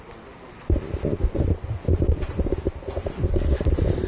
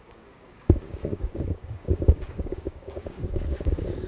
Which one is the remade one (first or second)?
second